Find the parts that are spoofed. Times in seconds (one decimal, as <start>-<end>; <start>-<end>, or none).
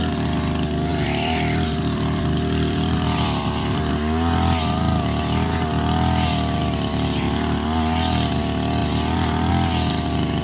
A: 0.9-3.9; 8.8-9.5